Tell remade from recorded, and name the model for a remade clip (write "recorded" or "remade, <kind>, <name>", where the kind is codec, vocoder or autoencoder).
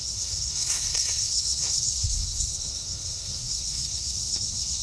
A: remade, codec, SNAC